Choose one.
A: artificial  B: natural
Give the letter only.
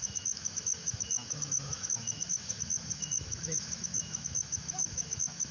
A